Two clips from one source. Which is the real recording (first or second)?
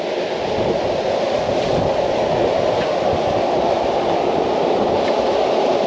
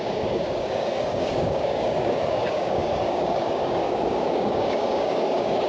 first